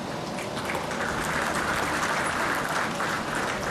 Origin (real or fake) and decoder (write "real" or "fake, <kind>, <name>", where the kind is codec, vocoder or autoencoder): real